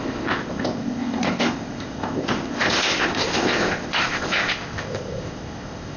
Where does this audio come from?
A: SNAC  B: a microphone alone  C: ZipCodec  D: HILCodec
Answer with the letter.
C